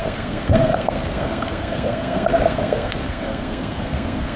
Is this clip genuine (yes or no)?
no